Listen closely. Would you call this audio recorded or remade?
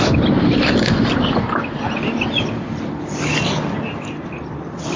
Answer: recorded